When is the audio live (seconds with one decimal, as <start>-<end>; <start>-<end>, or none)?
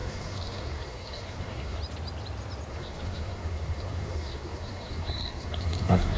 1.8-2.7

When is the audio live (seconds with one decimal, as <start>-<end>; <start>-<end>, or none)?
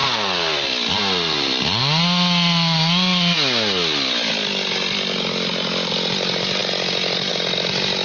0.0-8.0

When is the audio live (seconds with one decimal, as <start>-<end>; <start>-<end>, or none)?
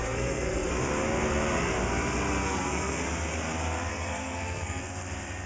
0.7-2.4; 3.0-3.9; 4.8-5.5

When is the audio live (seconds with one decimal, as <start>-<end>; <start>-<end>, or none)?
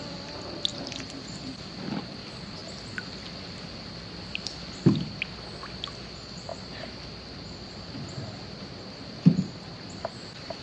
0.0-10.6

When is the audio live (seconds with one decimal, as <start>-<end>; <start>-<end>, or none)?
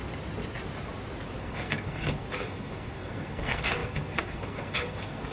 0.0-1.4